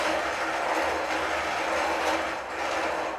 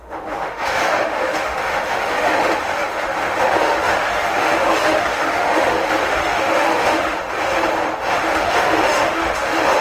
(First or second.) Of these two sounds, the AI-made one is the second